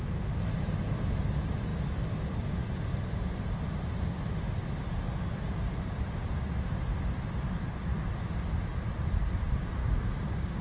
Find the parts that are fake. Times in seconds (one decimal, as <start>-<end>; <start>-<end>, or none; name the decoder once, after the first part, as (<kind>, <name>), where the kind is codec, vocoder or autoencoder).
9.8-10.6 (codec, DAC)